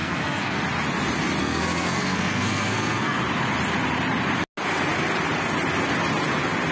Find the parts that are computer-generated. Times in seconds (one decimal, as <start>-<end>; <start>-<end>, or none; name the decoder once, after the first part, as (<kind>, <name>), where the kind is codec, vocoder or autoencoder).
0.0-0.6 (codec, SNAC); 1.4-3.2